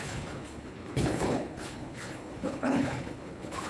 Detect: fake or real fake